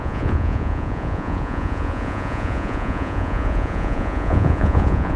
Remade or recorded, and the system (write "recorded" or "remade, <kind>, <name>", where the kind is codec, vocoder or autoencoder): remade, vocoder, Vocos